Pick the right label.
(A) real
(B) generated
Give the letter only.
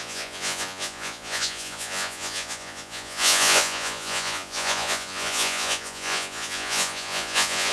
B